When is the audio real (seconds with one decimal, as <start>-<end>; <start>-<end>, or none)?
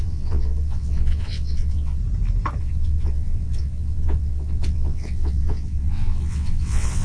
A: 2.0-2.6